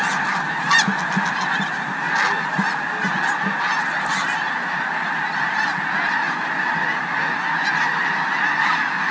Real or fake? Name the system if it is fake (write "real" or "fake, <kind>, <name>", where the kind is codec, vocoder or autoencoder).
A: real